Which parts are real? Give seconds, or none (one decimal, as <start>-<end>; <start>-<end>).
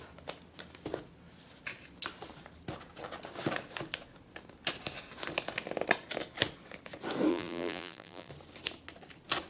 0.0-7.3; 8.3-9.5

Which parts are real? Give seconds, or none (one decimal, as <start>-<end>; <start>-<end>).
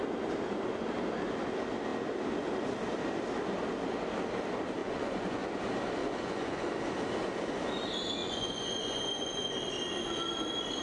0.0-4.8; 5.5-6.0; 6.7-8.2; 9.5-10.8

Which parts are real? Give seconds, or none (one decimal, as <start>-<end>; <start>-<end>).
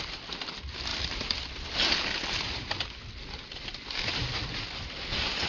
0.0-5.5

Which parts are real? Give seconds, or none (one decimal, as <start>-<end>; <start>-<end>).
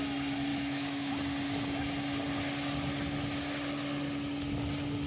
0.0-0.5; 1.1-5.1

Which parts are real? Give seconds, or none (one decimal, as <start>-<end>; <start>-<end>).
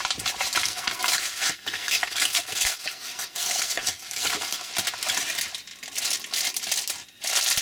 0.0-0.6; 4.7-7.6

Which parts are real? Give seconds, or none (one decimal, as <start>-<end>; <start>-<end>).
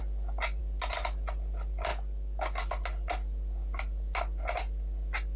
0.0-5.4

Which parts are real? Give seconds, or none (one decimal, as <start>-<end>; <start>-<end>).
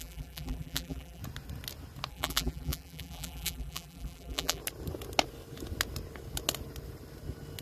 1.2-2.1; 4.6-7.6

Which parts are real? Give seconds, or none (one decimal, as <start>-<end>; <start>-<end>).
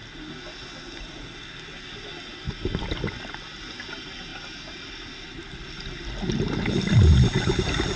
0.0-8.0